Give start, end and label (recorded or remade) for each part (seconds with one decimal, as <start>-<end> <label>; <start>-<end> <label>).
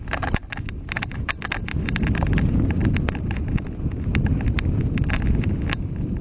0.0-6.2 recorded